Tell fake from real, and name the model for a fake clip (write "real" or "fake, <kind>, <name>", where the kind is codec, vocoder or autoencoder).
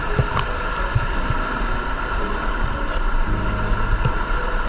real